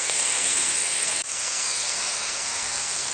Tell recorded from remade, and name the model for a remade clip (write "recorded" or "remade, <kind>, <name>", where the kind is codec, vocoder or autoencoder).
remade, codec, SNAC